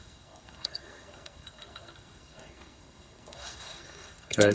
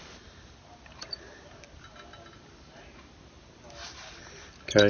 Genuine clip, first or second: second